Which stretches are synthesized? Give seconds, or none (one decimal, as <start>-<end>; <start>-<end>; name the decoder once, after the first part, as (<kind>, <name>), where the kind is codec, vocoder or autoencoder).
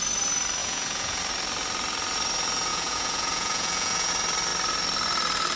0.6-1.2 (vocoder, Vocos); 2.7-4.1